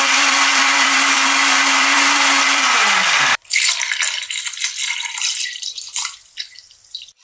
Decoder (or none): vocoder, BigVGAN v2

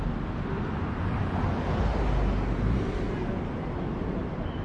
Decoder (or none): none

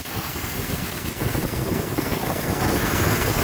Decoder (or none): codec, SNAC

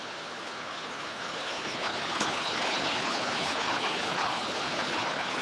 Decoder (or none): codec, HILCodec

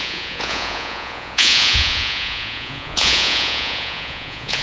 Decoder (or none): vocoder, Vocos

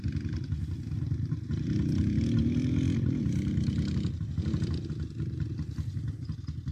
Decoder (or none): none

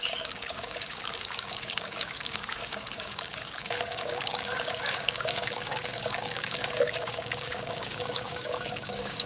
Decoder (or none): codec, DAC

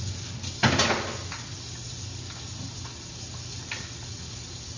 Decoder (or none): none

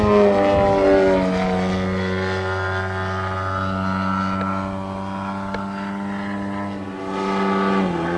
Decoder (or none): none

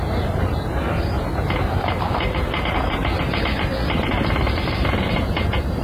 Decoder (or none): vocoder, BigVGAN v2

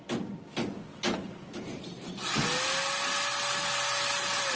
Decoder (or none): none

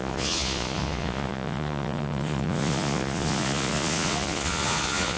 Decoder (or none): vocoder, Vocos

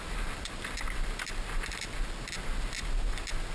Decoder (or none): none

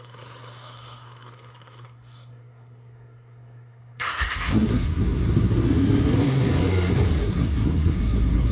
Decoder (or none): codec, SNAC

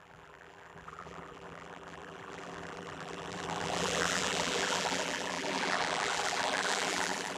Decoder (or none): vocoder, BigVGAN v2